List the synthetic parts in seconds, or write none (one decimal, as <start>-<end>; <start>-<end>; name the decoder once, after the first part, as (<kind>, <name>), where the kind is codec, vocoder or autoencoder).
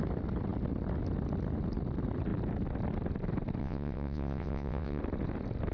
3.6-5.0 (vocoder, WaveNeXt)